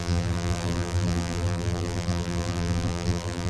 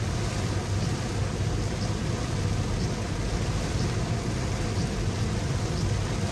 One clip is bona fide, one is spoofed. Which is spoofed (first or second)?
first